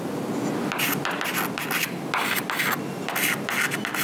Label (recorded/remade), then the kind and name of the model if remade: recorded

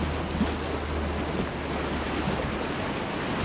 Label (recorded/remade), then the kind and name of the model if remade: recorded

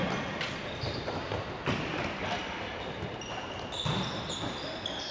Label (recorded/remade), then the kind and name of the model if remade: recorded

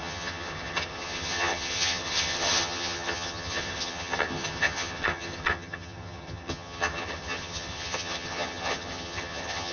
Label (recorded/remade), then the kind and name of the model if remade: remade, vocoder, HiFi-GAN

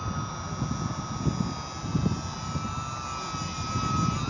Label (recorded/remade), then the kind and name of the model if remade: recorded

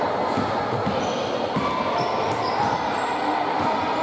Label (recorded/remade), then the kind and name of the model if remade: recorded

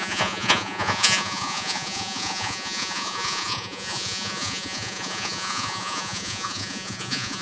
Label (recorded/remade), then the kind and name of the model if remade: remade, vocoder, Vocos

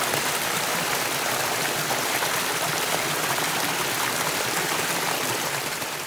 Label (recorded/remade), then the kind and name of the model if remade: remade, vocoder, BigVGAN v2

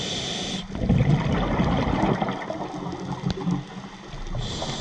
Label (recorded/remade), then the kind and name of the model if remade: recorded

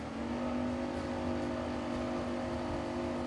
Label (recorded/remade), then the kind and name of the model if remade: recorded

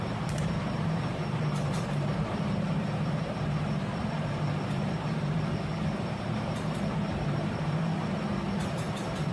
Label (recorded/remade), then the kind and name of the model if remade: remade, vocoder, BigVGAN v2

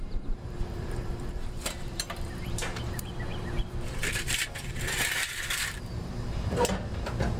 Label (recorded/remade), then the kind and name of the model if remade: remade, vocoder, BigVGAN v2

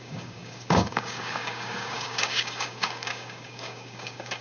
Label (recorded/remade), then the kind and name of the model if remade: remade, codec, DAC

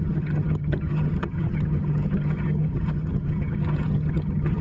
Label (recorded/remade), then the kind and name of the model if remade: remade, vocoder, HiFi-GAN